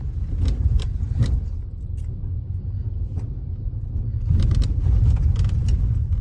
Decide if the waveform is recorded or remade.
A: recorded